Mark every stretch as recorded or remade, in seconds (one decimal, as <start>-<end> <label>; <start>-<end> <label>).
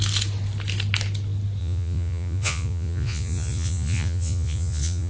0.0-1.6 recorded; 1.6-5.1 remade